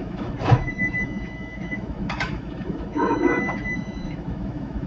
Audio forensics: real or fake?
fake